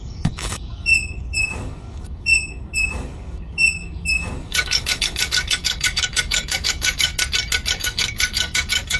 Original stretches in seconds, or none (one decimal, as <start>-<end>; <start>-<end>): 7.1-7.7